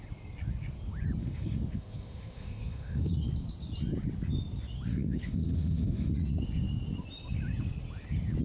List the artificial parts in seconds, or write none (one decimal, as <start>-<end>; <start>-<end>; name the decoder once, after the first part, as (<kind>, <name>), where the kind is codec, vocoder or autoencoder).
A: 1.2-3.1 (autoencoder, DAC-VAE); 4.9-6.1